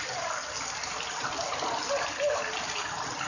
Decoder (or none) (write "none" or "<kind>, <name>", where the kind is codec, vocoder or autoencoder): none